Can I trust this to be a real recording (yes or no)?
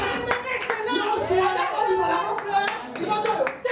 yes